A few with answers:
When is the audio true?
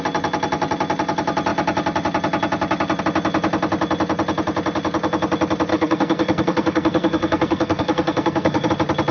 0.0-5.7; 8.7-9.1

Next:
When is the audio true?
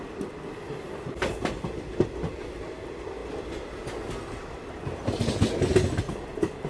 0.0-6.7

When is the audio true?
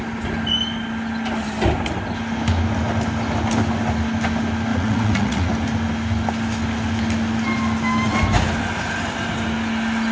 0.0-4.7; 5.5-10.1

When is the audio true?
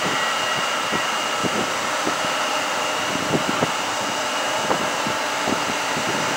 0.0-6.4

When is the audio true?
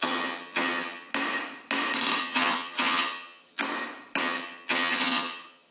1.1-2.2; 3.6-4.2